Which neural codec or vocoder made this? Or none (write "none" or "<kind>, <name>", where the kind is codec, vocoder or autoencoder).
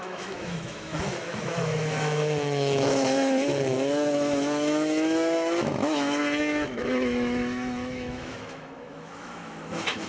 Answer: autoencoder, DAC-VAE